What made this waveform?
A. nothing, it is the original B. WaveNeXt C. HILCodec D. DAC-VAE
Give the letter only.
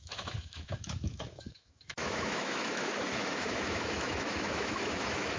D